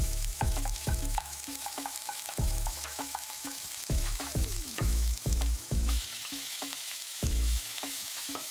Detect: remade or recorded remade